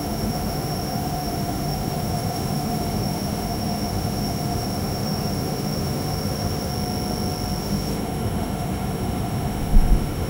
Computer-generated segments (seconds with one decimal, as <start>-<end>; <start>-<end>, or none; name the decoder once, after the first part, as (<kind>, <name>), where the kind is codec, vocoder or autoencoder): 0.0-6.7 (autoencoder, DAC-VAE); 7.6-10.3

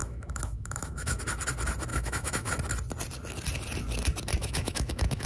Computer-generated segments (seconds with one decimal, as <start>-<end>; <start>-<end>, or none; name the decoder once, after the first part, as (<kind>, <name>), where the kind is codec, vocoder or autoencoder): 0.0-1.2 (autoencoder, DAC-VAE); 1.9-2.5; 4.4-5.3

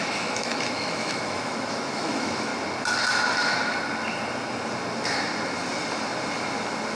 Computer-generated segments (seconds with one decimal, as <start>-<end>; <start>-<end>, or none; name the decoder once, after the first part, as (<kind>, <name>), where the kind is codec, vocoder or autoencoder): 0.0-2.5 (autoencoder, DAC-VAE)

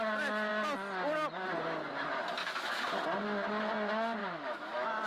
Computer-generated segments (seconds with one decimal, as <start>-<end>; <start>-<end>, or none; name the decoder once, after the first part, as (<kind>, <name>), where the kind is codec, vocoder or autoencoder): 2.4-2.9 (autoencoder, DAC-VAE); 4.2-5.1